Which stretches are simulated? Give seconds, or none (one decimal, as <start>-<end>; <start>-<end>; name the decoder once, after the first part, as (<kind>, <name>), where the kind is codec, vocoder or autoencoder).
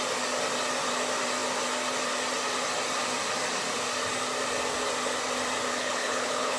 5.7-6.6 (codec, HILCodec)